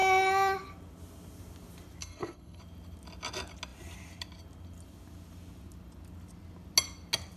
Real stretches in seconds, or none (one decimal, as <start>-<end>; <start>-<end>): 0.0-2.0; 2.6-7.4